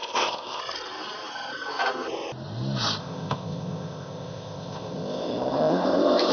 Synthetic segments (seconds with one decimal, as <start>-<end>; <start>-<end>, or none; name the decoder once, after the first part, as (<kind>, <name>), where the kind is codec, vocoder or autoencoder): 0.0-0.6 (codec, ZipCodec); 3.0-6.3